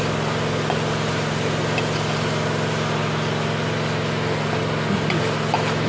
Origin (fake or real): real